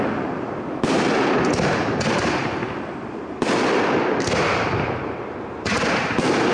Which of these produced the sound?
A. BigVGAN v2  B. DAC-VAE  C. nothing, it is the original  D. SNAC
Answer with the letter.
C